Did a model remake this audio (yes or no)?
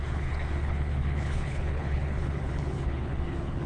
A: yes